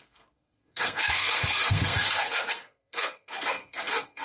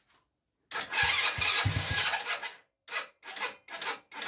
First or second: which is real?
second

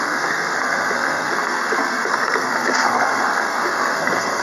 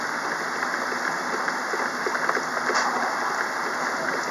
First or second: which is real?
second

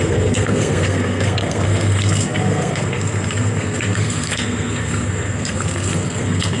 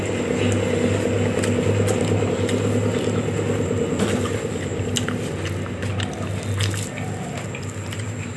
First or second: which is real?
second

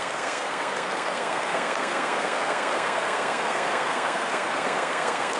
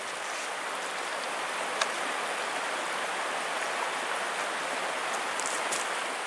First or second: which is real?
second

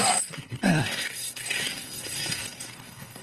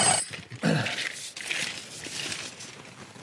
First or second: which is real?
second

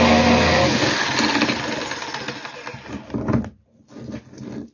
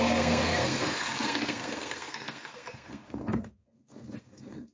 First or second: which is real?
first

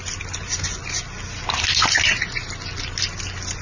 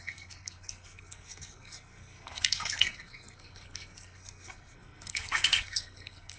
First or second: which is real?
first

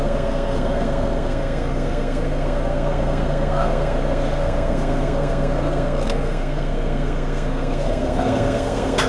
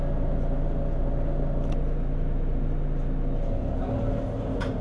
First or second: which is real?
second